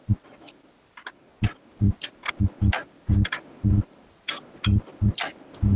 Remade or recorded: recorded